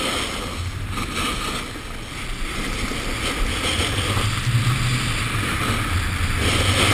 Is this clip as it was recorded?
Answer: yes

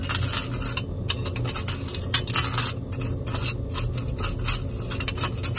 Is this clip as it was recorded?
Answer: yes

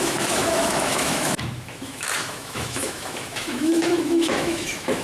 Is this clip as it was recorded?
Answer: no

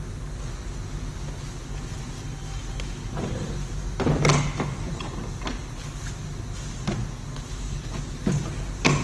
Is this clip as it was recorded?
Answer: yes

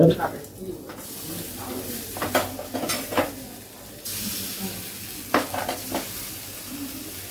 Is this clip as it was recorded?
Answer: yes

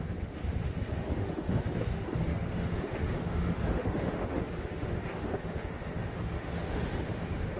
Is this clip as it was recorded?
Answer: no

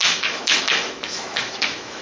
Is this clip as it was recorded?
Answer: no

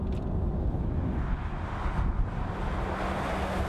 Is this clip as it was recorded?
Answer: yes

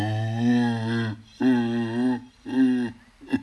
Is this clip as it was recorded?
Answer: yes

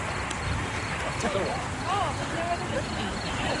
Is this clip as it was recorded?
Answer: yes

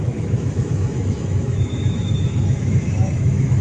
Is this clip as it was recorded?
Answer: no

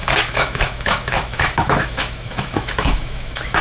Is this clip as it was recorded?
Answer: no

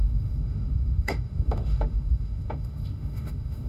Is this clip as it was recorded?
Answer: no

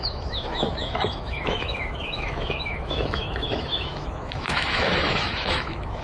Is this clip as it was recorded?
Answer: no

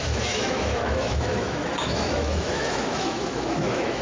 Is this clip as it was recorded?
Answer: no